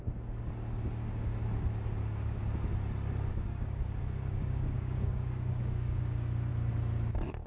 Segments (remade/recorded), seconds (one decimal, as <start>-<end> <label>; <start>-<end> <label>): 0.0-2.0 recorded; 2.0-2.5 remade; 2.5-3.3 recorded; 3.3-6.5 remade; 6.5-7.5 recorded